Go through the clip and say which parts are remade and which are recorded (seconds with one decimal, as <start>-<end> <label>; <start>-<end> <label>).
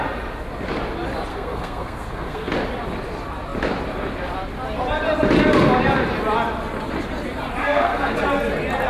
0.0-1.3 recorded; 1.3-2.5 remade; 2.5-7.6 recorded; 7.6-8.2 remade; 8.2-8.9 recorded